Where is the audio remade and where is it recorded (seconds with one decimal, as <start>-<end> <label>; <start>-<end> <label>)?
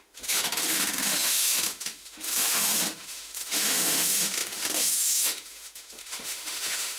0.0-7.0 remade